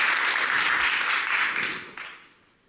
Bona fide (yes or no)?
yes